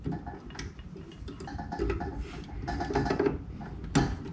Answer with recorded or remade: recorded